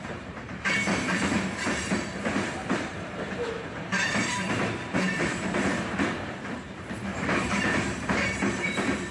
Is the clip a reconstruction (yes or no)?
yes